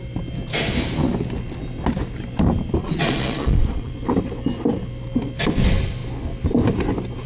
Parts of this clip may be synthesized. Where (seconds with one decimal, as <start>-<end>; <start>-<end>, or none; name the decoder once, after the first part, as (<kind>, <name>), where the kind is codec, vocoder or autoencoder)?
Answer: 2.8-3.9 (vocoder, Vocos)